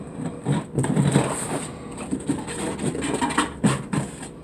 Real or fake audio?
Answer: real